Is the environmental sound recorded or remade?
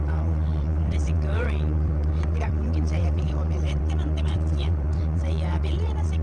remade